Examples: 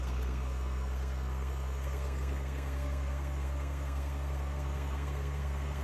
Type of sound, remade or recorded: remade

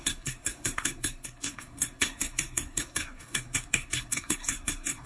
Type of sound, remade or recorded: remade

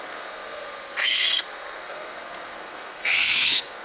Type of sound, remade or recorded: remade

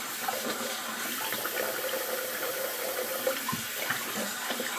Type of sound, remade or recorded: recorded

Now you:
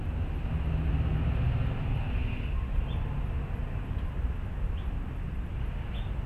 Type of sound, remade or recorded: recorded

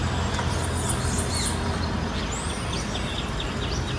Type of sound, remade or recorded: recorded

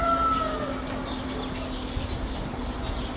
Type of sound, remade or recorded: recorded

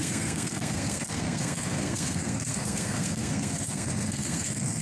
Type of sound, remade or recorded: remade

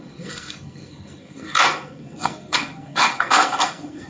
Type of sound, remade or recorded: remade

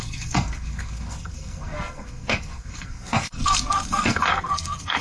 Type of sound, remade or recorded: remade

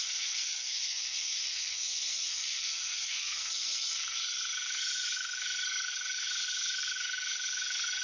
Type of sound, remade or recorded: remade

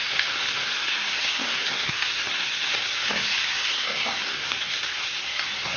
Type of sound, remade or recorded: remade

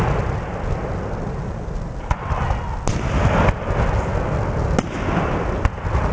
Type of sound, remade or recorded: recorded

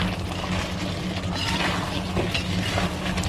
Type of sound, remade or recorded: recorded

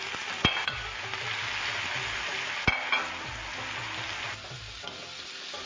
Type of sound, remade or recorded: recorded